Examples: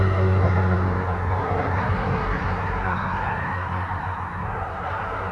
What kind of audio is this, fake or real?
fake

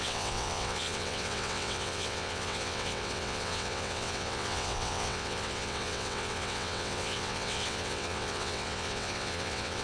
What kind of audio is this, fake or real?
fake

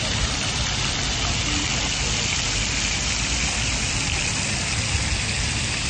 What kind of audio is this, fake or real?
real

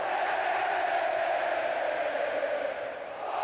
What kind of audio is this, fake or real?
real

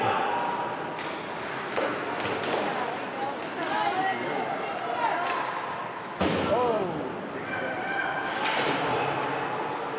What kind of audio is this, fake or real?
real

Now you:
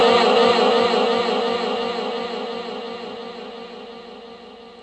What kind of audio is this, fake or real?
real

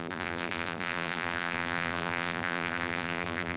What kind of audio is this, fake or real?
fake